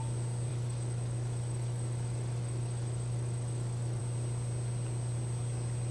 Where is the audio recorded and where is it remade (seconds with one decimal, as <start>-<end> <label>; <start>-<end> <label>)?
0.0-0.5 recorded; 0.5-4.0 remade; 4.0-5.9 recorded